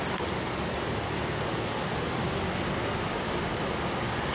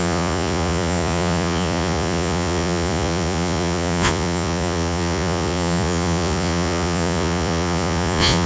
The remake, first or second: second